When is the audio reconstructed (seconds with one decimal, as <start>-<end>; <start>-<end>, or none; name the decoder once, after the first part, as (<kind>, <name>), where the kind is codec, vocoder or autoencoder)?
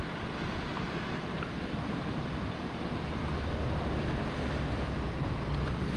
0.7-3.2 (vocoder, BigVGAN v2)